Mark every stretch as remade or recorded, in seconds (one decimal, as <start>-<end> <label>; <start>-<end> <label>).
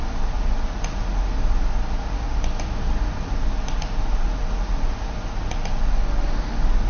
0.0-6.9 recorded